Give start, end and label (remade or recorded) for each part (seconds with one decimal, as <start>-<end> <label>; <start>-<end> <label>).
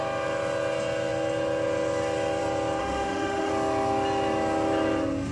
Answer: 0.0-2.8 recorded; 2.8-3.5 remade; 3.5-5.3 recorded